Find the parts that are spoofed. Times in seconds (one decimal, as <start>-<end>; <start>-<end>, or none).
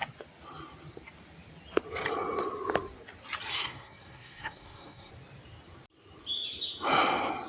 3.5-5.1